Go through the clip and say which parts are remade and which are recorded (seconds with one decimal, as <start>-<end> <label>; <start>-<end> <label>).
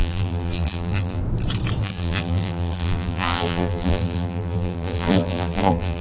0.0-1.2 remade; 1.2-1.8 recorded; 1.8-6.0 remade